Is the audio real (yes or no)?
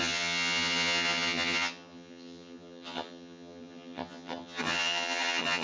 no